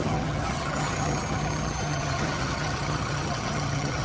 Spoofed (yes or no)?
yes